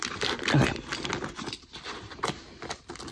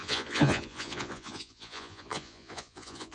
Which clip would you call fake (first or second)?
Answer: second